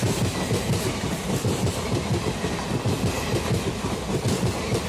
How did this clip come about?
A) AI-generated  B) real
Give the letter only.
B